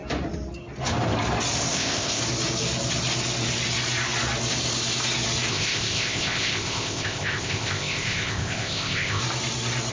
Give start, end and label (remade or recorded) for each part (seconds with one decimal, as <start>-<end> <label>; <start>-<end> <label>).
0.0-1.7 recorded; 1.7-2.2 remade; 2.2-5.5 recorded; 5.5-9.2 remade; 9.2-9.9 recorded